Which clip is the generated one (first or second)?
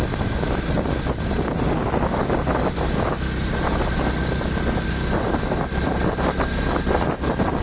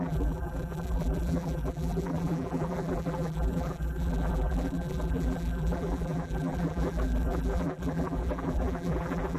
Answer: second